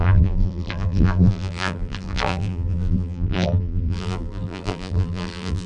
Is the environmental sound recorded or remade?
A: remade